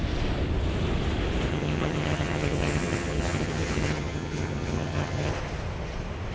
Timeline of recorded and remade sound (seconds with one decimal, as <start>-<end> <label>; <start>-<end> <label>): 0.0-1.5 recorded; 1.5-5.3 remade; 5.3-6.3 recorded